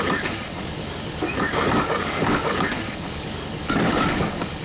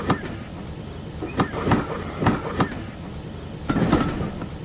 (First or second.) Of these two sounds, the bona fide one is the second